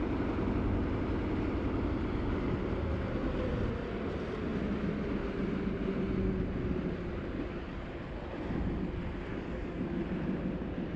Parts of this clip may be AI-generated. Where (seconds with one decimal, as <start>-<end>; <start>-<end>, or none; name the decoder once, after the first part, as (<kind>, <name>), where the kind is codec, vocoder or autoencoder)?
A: 9.3-10.0 (codec, DAC)